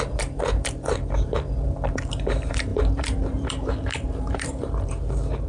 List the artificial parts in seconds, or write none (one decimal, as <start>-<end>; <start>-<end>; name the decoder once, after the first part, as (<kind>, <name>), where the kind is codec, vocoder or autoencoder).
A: 0.0-5.5 (vocoder, BigVGAN v2)